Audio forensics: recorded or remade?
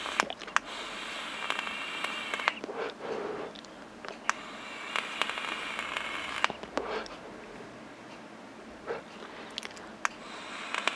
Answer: recorded